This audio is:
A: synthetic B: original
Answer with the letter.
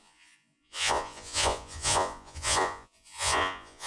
A